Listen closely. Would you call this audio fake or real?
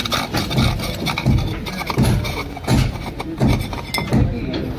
real